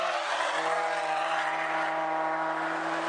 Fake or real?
real